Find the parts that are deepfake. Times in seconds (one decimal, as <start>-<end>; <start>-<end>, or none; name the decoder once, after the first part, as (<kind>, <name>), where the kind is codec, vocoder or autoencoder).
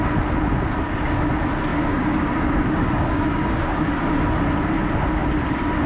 1.7-3.9 (codec, DAC)